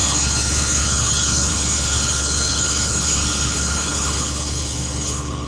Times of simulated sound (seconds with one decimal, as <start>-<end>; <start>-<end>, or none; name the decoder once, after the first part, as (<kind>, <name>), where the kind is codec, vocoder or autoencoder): 0.0-5.5 (codec, HILCodec)